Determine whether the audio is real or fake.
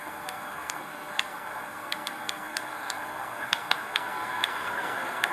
fake